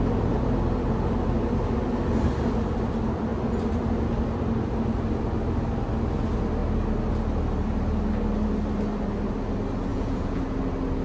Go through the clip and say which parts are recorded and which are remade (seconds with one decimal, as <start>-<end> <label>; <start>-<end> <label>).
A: 0.0-9.9 recorded; 9.9-10.4 remade; 10.4-11.0 recorded